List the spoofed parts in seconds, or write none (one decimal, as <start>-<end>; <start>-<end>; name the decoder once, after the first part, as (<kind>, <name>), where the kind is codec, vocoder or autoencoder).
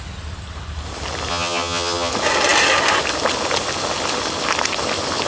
1.3-2.1 (vocoder, HiFi-GAN)